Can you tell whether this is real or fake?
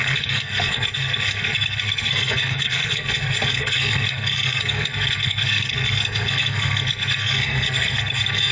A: fake